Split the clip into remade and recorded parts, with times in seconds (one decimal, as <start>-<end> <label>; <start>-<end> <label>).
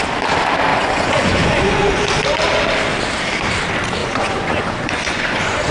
0.0-0.7 recorded; 0.7-2.0 remade; 2.0-4.0 recorded; 4.0-5.7 remade